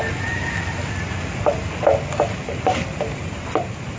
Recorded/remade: recorded